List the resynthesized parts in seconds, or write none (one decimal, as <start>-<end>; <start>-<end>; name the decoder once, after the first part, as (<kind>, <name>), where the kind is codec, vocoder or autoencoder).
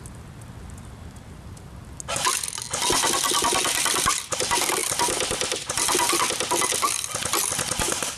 none